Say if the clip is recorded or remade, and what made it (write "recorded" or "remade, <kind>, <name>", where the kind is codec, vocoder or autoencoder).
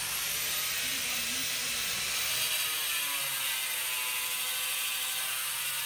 recorded